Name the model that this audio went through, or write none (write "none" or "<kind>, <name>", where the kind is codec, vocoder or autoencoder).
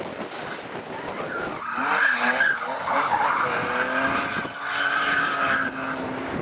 none